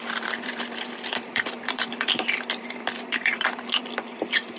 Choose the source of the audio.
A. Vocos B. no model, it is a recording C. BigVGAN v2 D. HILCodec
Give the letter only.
C